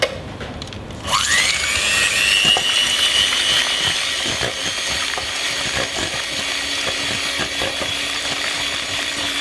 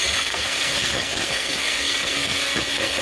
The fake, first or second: second